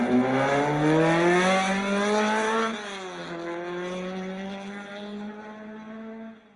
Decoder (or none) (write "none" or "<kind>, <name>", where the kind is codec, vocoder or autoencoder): none